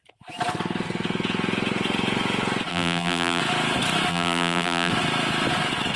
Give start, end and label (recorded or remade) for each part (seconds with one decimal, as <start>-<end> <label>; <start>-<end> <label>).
0.0-2.7 recorded; 2.7-3.4 remade; 3.4-4.1 recorded; 4.1-4.9 remade; 4.9-6.0 recorded